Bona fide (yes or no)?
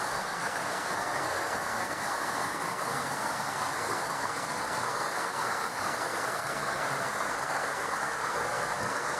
no